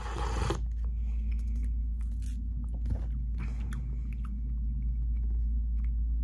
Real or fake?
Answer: real